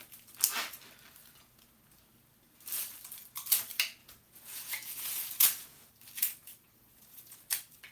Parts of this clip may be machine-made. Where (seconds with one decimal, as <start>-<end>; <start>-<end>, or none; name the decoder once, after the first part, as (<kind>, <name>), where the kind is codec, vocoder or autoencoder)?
4.0-5.9 (vocoder, Vocos); 6.5-7.4